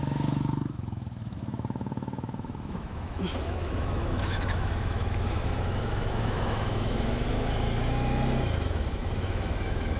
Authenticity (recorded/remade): remade